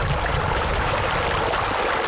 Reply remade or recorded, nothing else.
recorded